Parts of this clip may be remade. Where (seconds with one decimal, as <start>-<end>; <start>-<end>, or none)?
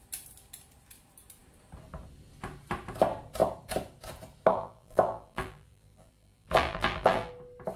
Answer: 4.5-7.3